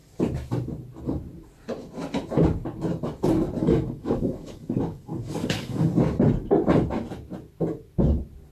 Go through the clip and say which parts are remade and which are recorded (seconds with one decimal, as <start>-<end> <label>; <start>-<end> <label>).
0.0-3.6 recorded; 3.6-5.9 remade; 5.9-8.5 recorded